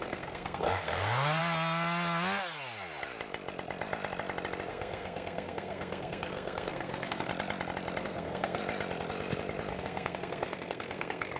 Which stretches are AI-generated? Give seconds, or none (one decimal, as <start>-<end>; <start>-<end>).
0.0-1.4; 4.7-7.3; 8.0-8.6; 9.7-11.4